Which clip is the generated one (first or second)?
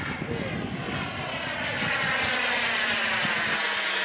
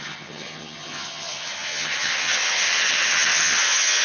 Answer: second